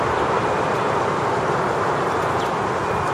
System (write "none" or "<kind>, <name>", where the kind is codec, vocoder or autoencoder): none